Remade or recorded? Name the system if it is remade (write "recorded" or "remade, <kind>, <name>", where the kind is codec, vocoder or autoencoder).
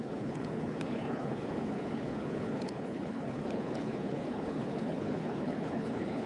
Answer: remade, codec, HILCodec